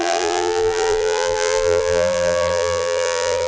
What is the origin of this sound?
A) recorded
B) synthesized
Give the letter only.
B